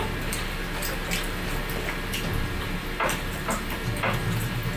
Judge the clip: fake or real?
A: real